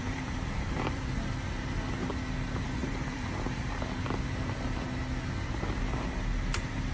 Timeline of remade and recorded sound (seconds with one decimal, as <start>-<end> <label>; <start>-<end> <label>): 0.0-1.0 remade; 1.0-2.8 recorded; 2.8-3.7 remade; 3.7-6.9 recorded